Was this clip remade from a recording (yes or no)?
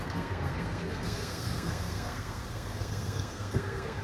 yes